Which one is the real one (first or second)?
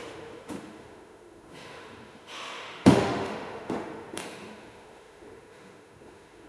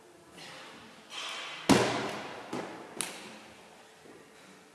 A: second